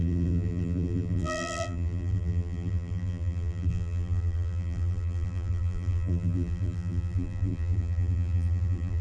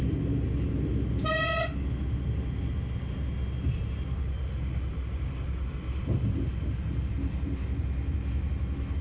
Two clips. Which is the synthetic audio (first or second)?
first